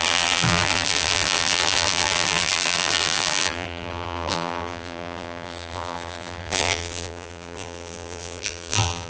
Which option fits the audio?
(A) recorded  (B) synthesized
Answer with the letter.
B